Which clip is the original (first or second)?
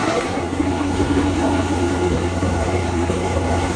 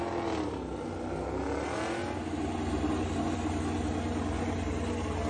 second